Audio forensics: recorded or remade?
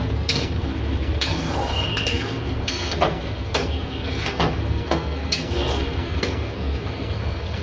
remade